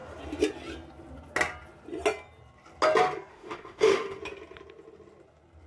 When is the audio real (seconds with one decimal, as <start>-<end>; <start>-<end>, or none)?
0.0-3.3; 4.2-5.7